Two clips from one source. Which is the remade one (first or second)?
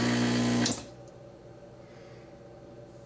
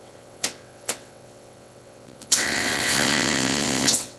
second